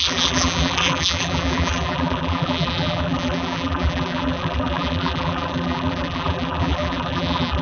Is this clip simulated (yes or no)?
yes